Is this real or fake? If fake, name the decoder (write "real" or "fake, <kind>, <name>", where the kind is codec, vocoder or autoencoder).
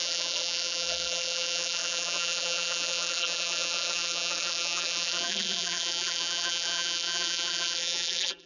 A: fake, vocoder, BigVGAN v2